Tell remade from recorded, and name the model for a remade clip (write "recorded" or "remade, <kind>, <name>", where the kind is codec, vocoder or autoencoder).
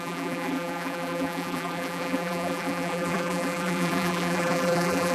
remade, vocoder, BigVGAN v2